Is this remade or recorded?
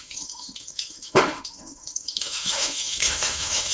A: remade